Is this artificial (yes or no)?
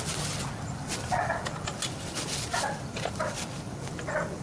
no